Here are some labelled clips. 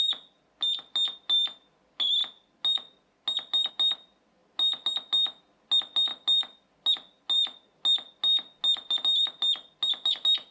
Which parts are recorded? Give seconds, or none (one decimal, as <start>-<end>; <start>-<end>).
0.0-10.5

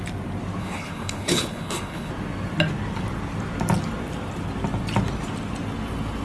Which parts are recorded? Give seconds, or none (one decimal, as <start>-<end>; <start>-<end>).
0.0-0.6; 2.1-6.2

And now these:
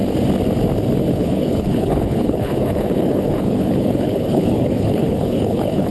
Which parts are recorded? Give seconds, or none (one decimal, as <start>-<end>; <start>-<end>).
0.0-1.1